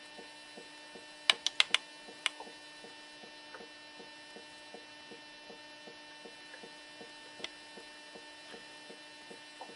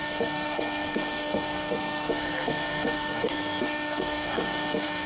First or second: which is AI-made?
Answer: second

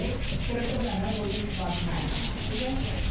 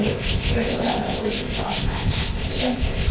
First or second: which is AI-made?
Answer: second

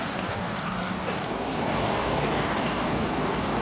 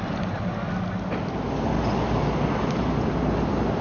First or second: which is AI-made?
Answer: first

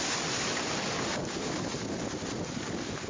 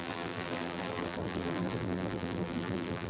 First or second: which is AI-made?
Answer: second